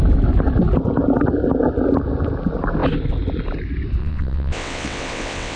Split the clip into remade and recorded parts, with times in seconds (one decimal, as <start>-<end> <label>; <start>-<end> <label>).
0.0-4.0 recorded; 4.0-5.6 remade